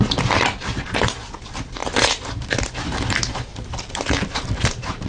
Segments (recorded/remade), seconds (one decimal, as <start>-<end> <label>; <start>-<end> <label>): 0.0-1.8 recorded; 1.8-2.6 remade; 2.6-3.5 recorded; 3.5-5.1 remade